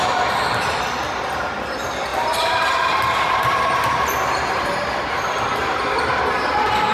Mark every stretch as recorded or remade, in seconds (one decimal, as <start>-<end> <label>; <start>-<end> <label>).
0.0-2.1 recorded; 2.1-6.2 remade; 6.2-6.9 recorded